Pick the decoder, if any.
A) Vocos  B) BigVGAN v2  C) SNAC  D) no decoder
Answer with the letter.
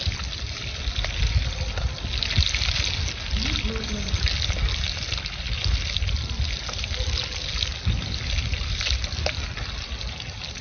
D